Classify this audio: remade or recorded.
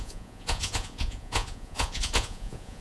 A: remade